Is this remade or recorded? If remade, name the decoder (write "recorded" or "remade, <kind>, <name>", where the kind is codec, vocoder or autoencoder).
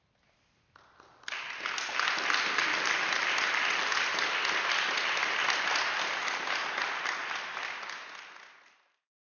recorded